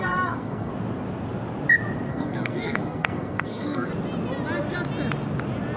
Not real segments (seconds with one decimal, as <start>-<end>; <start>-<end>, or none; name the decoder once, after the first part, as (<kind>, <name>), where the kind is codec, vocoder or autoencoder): 0.0-0.7 (codec, SNAC); 2.1-3.9